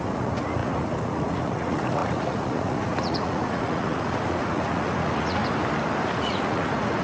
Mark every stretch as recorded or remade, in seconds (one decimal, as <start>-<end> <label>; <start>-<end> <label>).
0.0-5.4 remade; 5.4-6.1 recorded; 6.1-7.0 remade